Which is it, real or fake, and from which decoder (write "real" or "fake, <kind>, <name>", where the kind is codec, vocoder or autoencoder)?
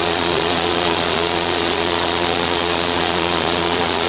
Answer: fake, vocoder, Vocos